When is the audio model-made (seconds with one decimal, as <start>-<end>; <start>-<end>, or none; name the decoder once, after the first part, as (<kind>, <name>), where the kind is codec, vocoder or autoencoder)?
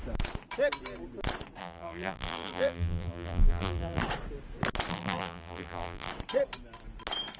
1.6-4.0 (vocoder, BigVGAN v2); 4.9-6.1